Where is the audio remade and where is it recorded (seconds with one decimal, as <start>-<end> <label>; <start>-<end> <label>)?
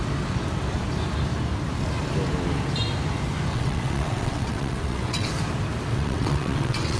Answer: 0.0-3.5 recorded; 3.5-5.3 remade; 5.3-5.9 recorded; 5.9-7.0 remade